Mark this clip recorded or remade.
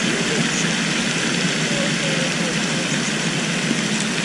recorded